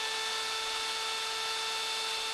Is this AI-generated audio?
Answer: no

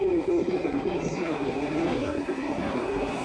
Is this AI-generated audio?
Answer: yes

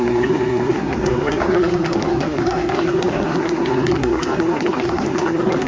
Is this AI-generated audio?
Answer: yes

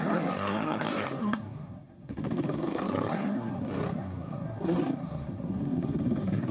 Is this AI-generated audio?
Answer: yes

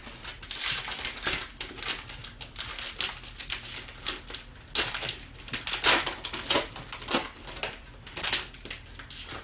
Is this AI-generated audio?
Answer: no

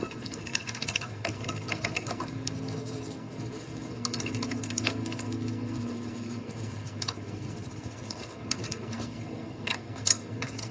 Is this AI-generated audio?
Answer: yes